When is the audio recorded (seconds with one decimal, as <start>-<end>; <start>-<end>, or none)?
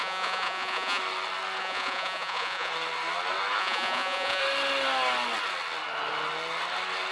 1.0-1.6; 2.7-3.6; 4.4-7.1